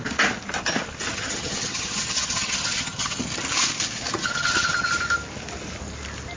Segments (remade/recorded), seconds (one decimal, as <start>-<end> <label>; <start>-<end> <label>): 0.0-1.1 recorded; 1.1-3.2 remade; 3.2-4.2 recorded; 4.2-4.9 remade; 4.9-6.4 recorded